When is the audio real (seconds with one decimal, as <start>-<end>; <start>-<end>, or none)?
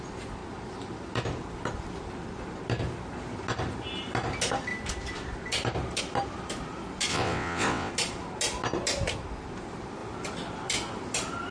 0.0-7.1; 7.9-11.5